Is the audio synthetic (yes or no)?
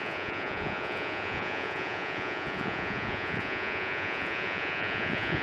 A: yes